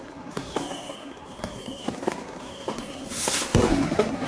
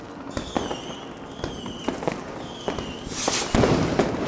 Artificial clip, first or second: first